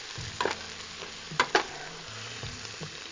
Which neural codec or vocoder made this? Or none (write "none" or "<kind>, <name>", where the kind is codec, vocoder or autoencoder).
none